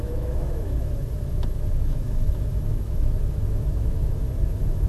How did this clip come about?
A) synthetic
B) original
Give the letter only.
A